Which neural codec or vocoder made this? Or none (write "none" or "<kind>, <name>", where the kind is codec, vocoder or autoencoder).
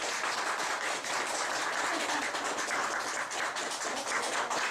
none